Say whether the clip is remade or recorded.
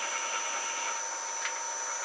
recorded